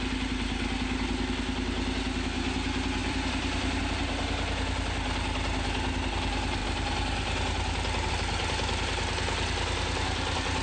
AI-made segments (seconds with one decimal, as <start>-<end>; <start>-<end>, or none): 3.0-3.8; 6.6-8.1